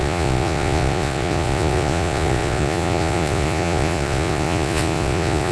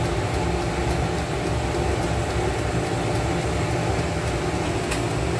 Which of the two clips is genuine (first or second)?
second